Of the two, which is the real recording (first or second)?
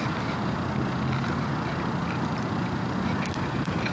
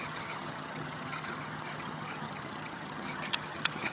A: first